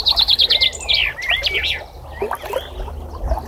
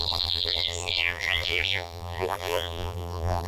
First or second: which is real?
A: first